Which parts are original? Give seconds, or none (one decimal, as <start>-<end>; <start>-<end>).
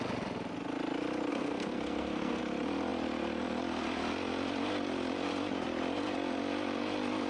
0.0-1.3; 2.4-7.3